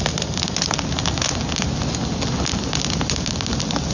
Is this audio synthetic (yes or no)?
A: no